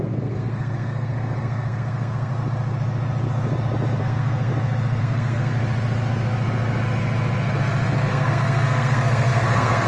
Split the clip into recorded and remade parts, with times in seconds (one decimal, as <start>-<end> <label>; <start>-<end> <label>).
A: 0.0-2.3 remade; 2.3-4.0 recorded; 4.0-4.5 remade; 4.5-5.0 recorded; 5.0-5.5 remade; 5.5-8.1 recorded; 8.1-9.9 remade